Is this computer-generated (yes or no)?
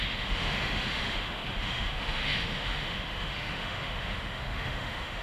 yes